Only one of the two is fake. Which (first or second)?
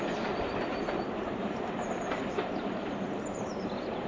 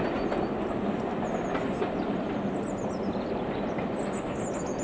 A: first